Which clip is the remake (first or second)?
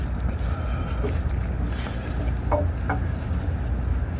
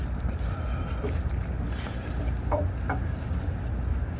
second